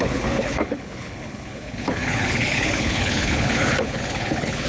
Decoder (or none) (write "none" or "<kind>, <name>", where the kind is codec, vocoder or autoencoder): codec, HILCodec